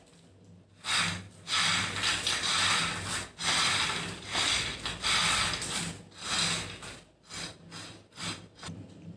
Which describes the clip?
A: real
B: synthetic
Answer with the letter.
A